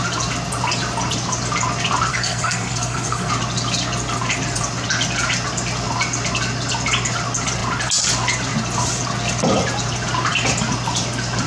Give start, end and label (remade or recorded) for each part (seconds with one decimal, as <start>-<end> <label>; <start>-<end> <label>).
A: 0.0-2.1 recorded; 2.1-3.3 remade; 3.3-11.5 recorded